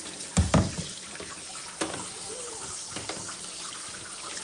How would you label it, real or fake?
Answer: real